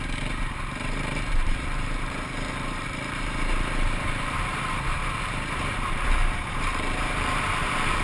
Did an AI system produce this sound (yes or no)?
yes